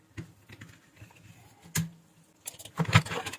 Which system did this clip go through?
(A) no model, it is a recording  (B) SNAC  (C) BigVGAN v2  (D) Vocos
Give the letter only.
A